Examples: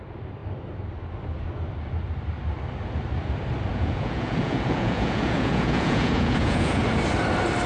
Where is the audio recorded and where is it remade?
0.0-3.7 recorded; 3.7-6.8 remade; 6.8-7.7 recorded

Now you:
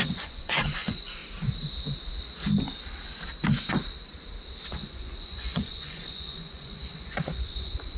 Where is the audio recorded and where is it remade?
0.0-1.2 remade; 1.2-4.7 recorded; 4.7-8.0 remade

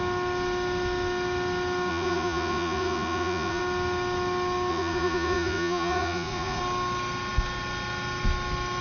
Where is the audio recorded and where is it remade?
0.0-1.9 recorded; 1.9-3.6 remade; 3.6-4.7 recorded; 4.7-6.6 remade; 6.6-8.8 recorded

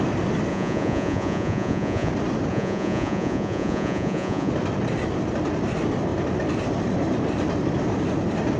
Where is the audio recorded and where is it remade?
0.0-0.5 recorded; 0.5-2.1 remade; 2.1-2.5 recorded; 2.5-4.5 remade; 4.5-8.6 recorded

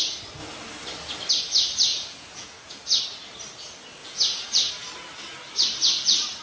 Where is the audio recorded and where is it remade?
0.0-1.9 recorded; 1.9-3.0 remade; 3.0-4.0 recorded; 4.0-4.7 remade; 4.7-6.4 recorded

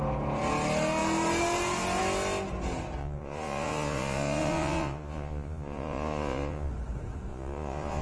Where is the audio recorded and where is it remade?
0.0-3.0 recorded; 3.0-6.7 remade; 6.7-7.3 recorded; 7.3-8.0 remade

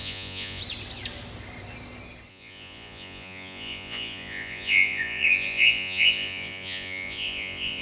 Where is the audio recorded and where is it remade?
0.0-0.6 remade; 0.6-2.3 recorded; 2.3-7.8 remade